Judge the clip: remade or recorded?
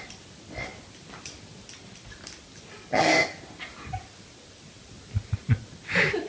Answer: recorded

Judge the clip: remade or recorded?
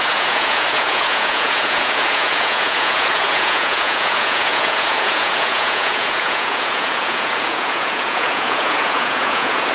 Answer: remade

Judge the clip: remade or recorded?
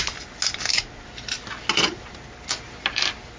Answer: recorded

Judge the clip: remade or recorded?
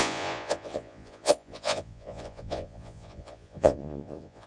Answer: remade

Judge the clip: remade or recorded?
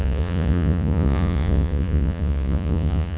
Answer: remade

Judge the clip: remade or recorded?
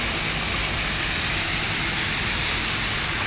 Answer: recorded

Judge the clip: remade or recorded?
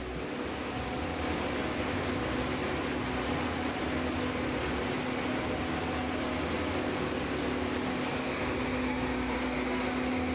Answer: recorded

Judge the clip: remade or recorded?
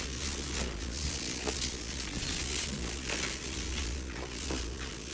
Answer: remade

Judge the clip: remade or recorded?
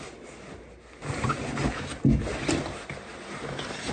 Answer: recorded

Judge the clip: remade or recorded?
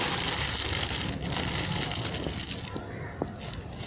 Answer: recorded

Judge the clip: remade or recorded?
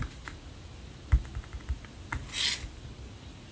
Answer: recorded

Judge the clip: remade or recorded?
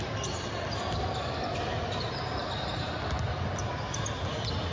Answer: recorded